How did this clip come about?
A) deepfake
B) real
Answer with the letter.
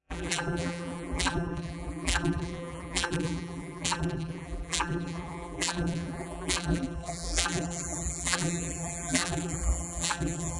A